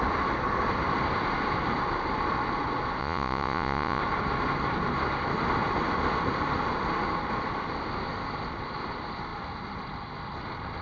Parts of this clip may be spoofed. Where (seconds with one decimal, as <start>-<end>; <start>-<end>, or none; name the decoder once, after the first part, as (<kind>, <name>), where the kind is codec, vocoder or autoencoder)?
3.0-4.0 (vocoder, Vocos)